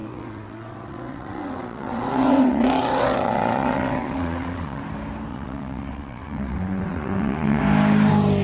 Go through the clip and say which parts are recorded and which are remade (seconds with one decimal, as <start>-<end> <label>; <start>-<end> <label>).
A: 0.0-4.8 remade; 4.8-5.3 recorded; 5.3-7.6 remade; 7.6-8.4 recorded

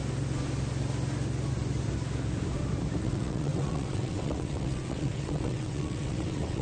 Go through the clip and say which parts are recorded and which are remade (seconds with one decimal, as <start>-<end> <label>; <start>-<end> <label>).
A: 0.0-3.0 recorded; 3.0-6.6 remade